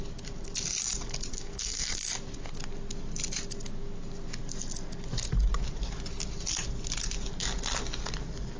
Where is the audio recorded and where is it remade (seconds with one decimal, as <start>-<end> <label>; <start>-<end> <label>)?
0.0-1.3 recorded; 1.3-2.1 remade; 2.1-8.6 recorded

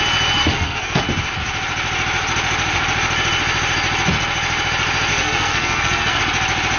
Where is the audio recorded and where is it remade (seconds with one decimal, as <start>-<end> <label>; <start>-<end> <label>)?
0.0-0.4 recorded; 0.4-1.0 remade; 1.0-5.1 recorded; 5.1-6.2 remade; 6.2-6.8 recorded

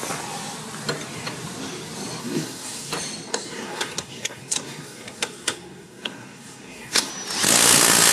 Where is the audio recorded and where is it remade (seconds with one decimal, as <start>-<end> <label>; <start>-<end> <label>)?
0.0-2.2 recorded; 2.2-2.9 remade; 2.9-3.3 recorded; 3.3-7.1 remade; 7.1-8.1 recorded

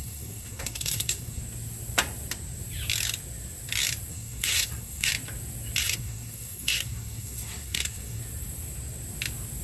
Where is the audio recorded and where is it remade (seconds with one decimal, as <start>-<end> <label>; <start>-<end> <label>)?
0.0-1.4 remade; 1.4-4.1 recorded; 4.1-5.1 remade; 5.1-5.8 recorded; 5.8-8.2 remade; 8.2-9.6 recorded

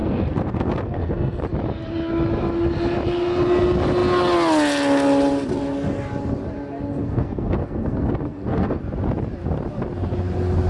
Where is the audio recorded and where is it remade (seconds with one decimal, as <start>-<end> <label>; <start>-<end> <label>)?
0.0-1.4 remade; 1.4-6.9 recorded; 6.9-8.8 remade; 8.8-10.7 recorded

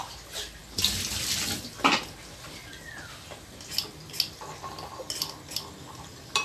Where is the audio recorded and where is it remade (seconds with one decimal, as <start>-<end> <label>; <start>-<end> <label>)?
0.0-6.4 recorded

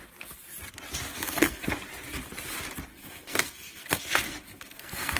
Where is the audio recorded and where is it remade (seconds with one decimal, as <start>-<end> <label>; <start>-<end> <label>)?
0.0-1.1 recorded; 1.1-1.7 remade; 1.7-2.9 recorded; 2.9-5.2 remade

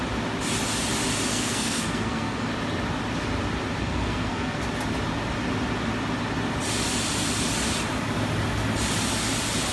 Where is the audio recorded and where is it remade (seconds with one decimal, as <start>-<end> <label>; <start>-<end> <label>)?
0.0-1.3 recorded; 1.3-2.5 remade; 2.5-3.8 recorded; 3.8-4.6 remade; 4.6-9.7 recorded